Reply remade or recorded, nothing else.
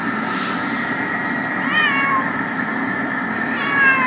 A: remade